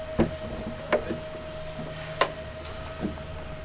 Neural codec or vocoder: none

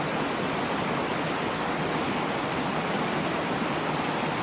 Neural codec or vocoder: none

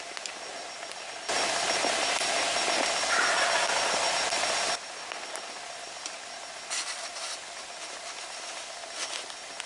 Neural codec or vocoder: none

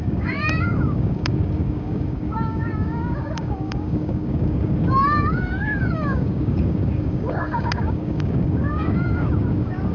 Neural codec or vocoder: codec, DAC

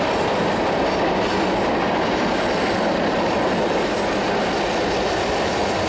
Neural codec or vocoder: none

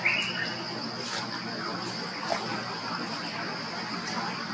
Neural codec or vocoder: none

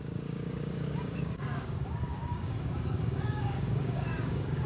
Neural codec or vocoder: codec, DAC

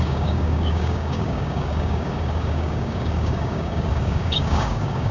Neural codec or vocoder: codec, DAC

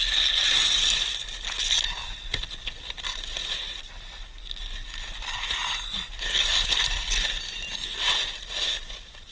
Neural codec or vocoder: none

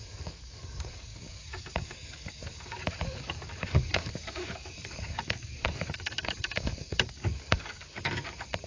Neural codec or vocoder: codec, DAC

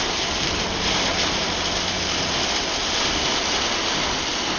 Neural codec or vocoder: none